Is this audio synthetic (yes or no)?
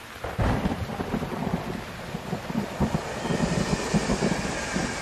no